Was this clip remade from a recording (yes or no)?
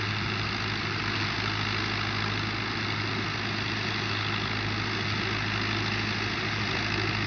no